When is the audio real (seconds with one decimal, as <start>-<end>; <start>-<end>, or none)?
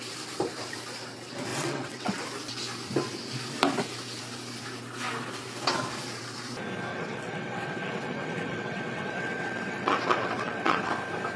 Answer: 0.0-1.5; 2.1-6.9; 10.9-11.4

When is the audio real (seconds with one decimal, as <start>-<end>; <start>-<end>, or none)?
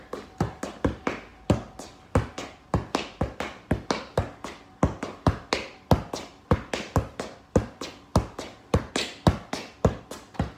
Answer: 0.0-10.6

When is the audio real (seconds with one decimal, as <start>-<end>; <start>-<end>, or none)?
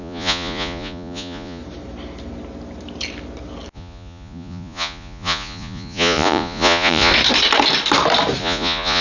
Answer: 1.6-3.7; 7.1-8.4